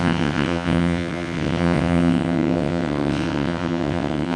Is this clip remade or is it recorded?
remade